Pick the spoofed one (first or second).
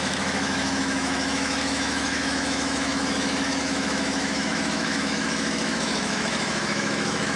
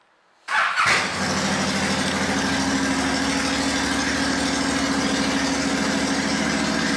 first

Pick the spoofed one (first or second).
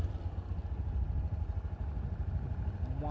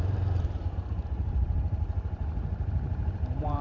second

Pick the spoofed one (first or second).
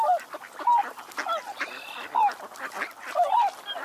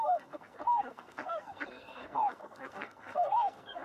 second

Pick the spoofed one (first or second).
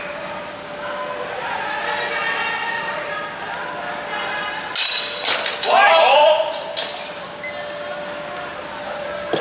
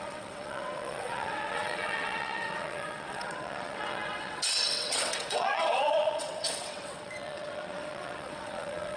second